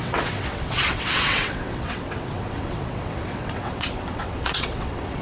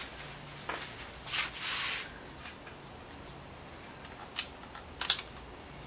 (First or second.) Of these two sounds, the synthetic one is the first